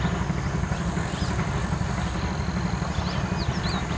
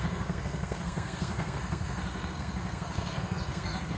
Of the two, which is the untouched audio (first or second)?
first